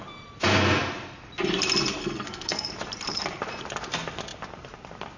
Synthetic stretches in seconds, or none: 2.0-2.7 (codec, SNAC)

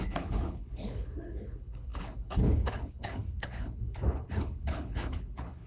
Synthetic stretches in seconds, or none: 0.0-5.7 (codec, HILCodec)